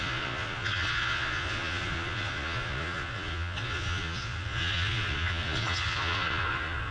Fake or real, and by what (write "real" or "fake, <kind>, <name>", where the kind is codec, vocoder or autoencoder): fake, vocoder, Vocos